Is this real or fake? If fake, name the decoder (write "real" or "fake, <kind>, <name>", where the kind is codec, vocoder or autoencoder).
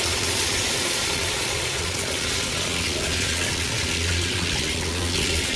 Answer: fake, vocoder, Vocos